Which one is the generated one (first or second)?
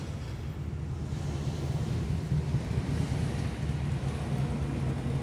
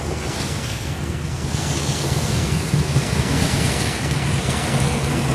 second